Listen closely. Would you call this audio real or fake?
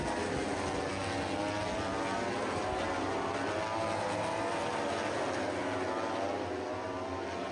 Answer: real